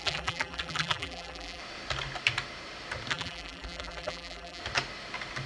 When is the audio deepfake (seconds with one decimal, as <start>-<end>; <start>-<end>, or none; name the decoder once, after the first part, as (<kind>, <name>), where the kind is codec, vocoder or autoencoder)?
0.0-1.6 (vocoder, BigVGAN v2); 3.1-4.6